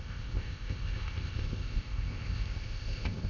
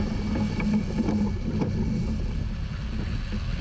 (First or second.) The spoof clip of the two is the first